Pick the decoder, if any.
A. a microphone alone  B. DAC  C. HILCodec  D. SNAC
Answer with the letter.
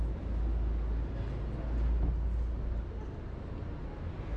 A